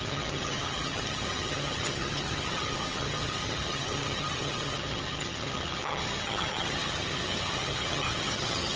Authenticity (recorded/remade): remade